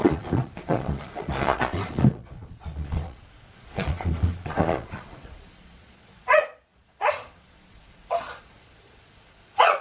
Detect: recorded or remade remade